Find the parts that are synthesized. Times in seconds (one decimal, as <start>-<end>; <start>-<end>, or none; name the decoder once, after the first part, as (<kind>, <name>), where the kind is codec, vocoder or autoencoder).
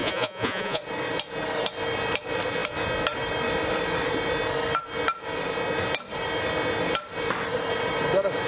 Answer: 0.0-0.8 (vocoder, Vocos)